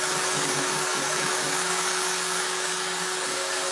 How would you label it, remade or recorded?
remade